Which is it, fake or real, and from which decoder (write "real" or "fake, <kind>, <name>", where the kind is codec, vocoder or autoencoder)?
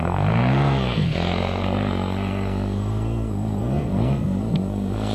fake, codec, SNAC